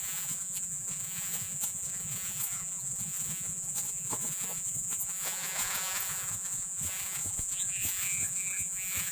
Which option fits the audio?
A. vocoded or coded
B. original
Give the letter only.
A